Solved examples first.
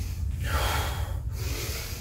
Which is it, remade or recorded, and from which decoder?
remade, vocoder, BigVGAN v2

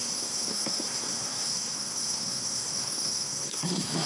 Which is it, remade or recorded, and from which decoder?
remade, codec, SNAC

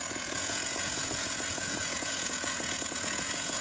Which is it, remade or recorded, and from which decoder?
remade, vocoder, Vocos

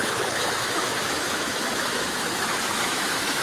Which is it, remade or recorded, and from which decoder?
remade, autoencoder, DAC-VAE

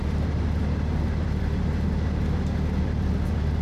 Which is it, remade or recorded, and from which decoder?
recorded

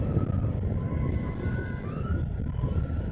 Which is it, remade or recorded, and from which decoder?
recorded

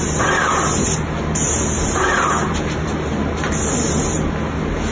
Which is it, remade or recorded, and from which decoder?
recorded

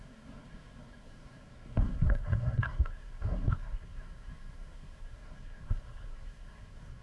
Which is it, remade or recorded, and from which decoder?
remade, codec, SNAC